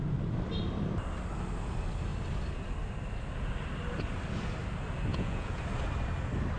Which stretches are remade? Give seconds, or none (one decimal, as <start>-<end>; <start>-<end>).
5.1-5.6